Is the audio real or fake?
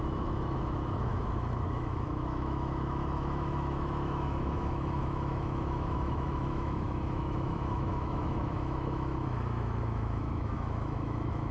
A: fake